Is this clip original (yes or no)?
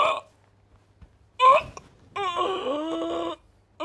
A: yes